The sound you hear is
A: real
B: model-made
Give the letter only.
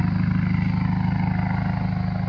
A